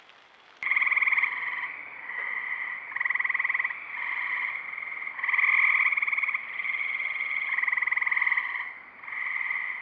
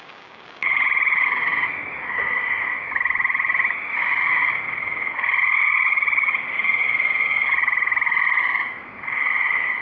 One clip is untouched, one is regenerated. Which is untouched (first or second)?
first